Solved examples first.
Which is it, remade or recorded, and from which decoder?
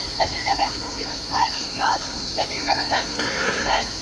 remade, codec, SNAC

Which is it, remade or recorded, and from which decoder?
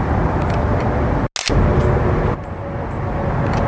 recorded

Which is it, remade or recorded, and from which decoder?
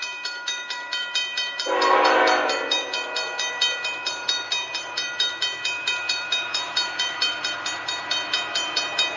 remade, vocoder, BigVGAN v2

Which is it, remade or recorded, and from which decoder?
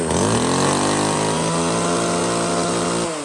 recorded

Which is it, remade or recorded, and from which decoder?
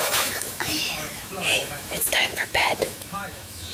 remade, autoencoder, DAC-VAE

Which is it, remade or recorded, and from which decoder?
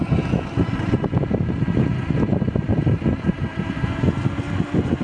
recorded